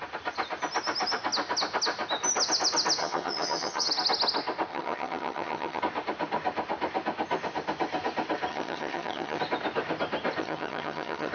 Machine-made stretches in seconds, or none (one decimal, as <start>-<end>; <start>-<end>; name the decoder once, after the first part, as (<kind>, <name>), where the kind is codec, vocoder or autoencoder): 3.0-3.9 (vocoder, HiFi-GAN); 4.7-5.8; 8.5-9.4; 10.4-11.3